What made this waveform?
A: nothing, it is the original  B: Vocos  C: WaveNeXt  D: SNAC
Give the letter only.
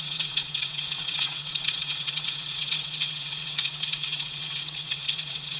C